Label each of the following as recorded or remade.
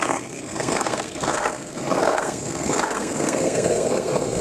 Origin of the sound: remade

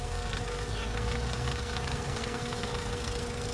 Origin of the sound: remade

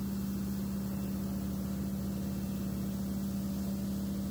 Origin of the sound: recorded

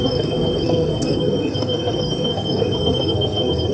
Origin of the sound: remade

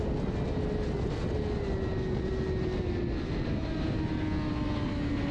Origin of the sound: recorded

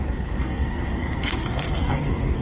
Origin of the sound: remade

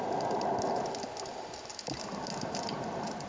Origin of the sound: recorded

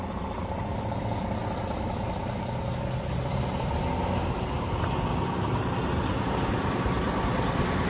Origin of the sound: recorded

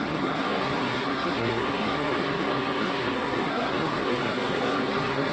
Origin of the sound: remade